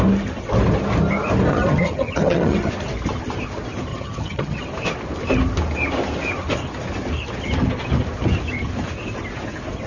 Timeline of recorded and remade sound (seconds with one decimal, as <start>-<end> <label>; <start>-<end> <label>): 0.0-1.5 recorded; 1.5-2.7 remade; 2.7-3.9 recorded; 3.9-4.6 remade; 4.6-9.9 recorded